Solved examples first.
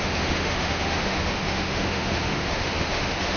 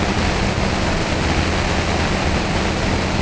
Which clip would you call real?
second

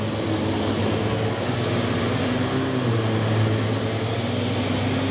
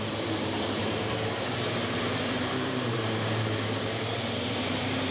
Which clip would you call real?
first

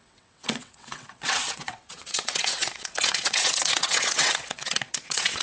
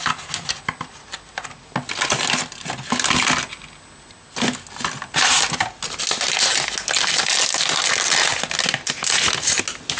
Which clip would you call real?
second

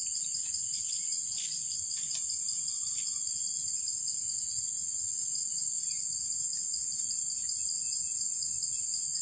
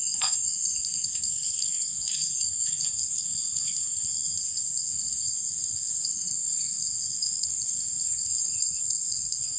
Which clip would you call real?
first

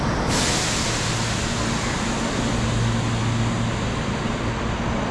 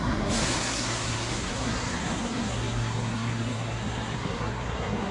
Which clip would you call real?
first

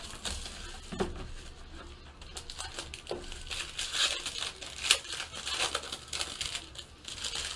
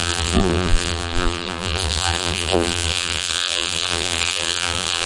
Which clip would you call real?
first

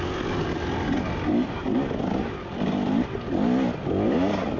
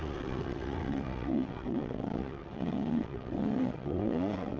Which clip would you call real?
first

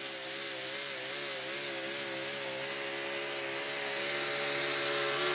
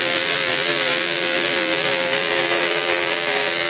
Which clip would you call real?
first